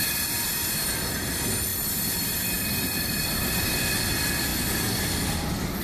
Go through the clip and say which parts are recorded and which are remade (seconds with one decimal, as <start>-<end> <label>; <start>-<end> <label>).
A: 0.0-5.8 recorded